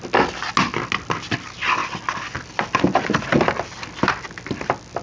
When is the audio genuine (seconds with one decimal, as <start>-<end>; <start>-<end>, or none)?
0.0-5.0